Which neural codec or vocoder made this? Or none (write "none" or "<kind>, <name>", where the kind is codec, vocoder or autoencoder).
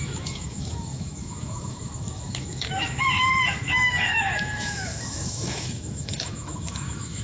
autoencoder, DAC-VAE